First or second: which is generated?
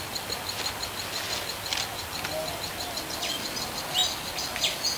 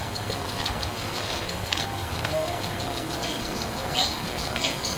second